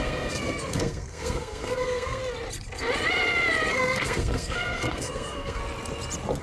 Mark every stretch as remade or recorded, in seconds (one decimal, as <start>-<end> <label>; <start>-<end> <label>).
0.0-2.2 remade; 2.2-3.7 recorded; 3.7-5.6 remade; 5.6-6.4 recorded